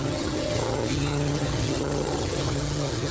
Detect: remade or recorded remade